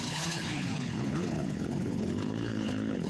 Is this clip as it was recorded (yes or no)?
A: no